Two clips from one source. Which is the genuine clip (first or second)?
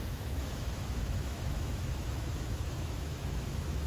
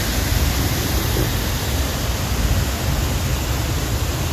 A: second